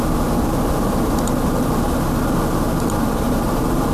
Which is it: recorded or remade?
remade